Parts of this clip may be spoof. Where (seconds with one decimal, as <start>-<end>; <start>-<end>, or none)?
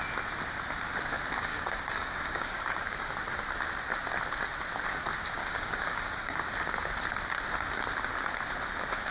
1.5-3.1; 5.4-6.5